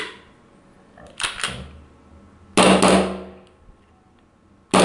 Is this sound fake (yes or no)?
no